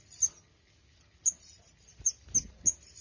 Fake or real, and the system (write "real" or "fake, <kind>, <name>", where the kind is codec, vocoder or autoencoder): real